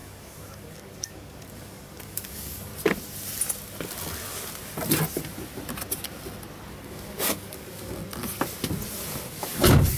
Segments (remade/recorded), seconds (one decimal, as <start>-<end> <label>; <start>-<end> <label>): 0.0-2.7 remade; 2.7-6.7 recorded; 6.7-8.0 remade; 8.0-9.3 recorded; 9.3-10.0 remade